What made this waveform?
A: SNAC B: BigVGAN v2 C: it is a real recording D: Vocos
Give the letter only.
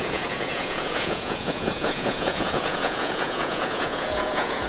D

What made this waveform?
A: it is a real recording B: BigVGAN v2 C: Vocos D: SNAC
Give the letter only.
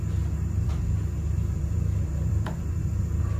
B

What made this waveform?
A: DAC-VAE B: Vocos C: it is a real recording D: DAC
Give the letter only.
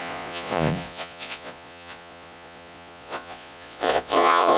B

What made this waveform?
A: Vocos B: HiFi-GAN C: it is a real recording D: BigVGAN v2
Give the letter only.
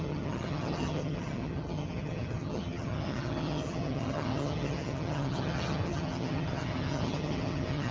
B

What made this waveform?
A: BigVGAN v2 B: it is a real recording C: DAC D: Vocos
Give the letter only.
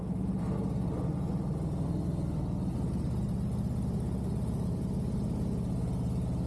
B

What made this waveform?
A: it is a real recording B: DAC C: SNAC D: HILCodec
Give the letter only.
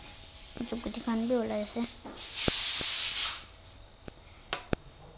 A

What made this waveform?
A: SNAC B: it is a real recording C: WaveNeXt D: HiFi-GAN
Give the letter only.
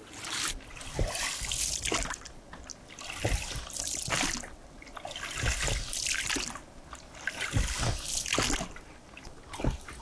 B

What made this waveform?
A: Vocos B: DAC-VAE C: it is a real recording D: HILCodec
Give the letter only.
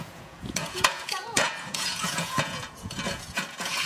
A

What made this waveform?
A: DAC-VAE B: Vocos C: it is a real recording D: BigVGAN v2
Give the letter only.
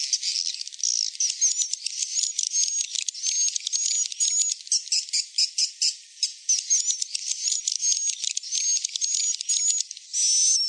C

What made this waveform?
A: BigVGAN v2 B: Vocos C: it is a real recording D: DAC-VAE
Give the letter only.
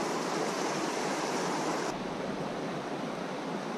A